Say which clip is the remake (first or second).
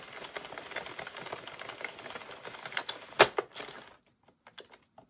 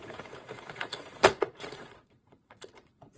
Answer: second